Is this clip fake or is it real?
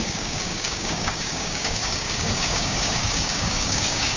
fake